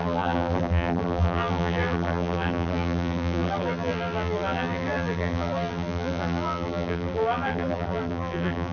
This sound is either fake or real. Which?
fake